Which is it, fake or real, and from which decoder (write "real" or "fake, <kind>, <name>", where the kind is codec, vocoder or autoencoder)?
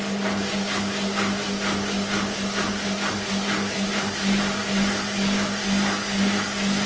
real